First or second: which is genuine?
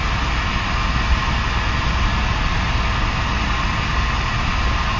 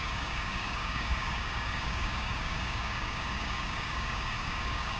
first